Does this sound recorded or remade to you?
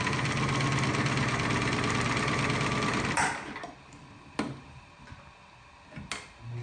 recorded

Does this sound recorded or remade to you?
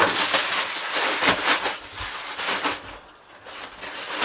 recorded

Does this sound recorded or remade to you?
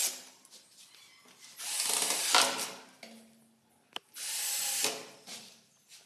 recorded